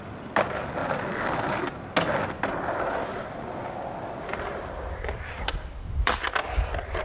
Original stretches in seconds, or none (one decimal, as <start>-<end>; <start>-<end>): 0.0-7.0